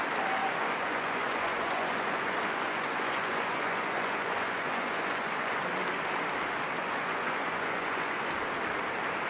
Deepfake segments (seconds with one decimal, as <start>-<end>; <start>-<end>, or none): 0.4-5.6; 6.8-8.3